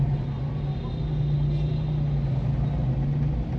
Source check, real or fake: real